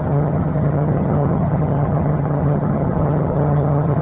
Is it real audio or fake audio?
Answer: fake